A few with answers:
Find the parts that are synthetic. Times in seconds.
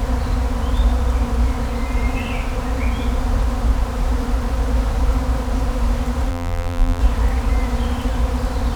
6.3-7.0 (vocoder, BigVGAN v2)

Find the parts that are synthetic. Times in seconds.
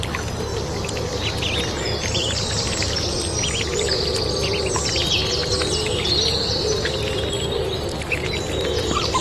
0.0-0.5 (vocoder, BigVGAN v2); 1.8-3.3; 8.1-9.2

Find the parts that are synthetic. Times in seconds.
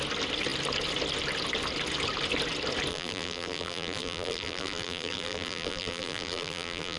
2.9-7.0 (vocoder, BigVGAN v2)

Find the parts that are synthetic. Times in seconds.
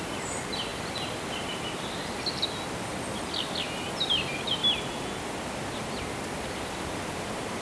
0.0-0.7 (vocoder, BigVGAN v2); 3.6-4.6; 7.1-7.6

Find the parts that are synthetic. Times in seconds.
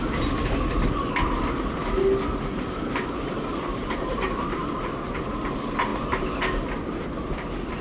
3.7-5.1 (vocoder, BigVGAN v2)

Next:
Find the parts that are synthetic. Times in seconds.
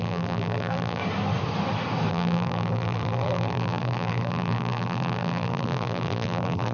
0.0-1.0 (vocoder, BigVGAN v2); 2.1-6.7